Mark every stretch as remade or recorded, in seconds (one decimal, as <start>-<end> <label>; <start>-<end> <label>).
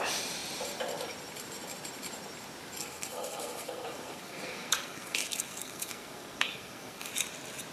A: 0.0-2.8 recorded; 2.8-7.1 remade; 7.1-7.7 recorded